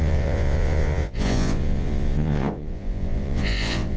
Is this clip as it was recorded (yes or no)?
no